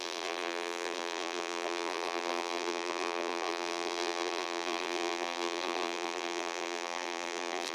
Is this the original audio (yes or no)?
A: no